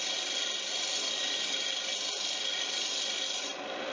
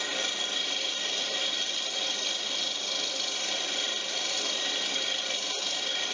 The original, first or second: first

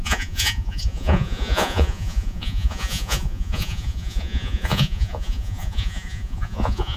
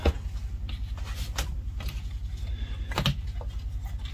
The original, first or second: second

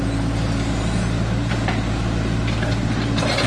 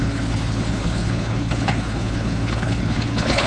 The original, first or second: first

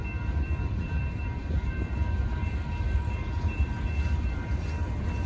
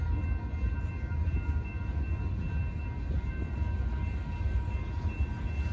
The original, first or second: second